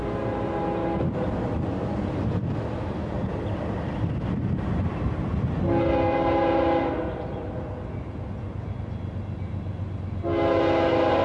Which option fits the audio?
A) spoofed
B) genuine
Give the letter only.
B